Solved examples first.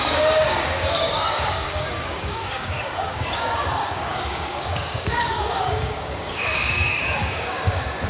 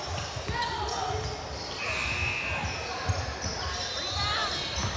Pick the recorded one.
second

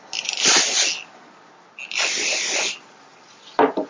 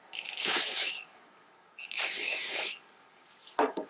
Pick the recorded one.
first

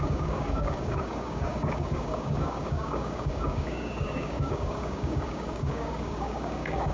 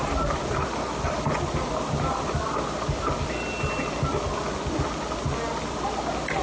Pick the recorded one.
second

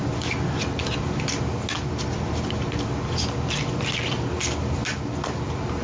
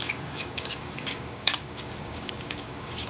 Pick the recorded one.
first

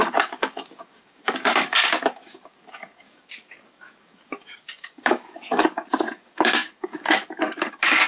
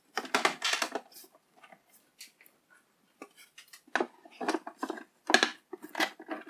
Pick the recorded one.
second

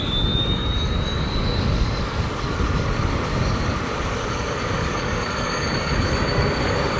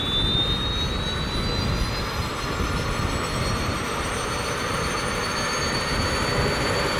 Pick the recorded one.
second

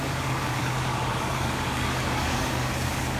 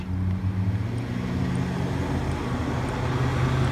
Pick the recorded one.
second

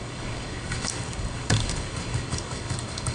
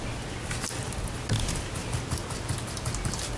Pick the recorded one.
second